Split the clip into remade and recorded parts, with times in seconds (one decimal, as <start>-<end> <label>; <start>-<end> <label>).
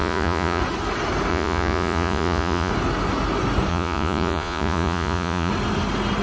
0.0-0.6 remade; 0.6-1.3 recorded; 1.3-2.7 remade; 2.7-3.7 recorded; 3.7-5.5 remade; 5.5-6.2 recorded